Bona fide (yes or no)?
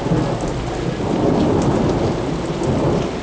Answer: yes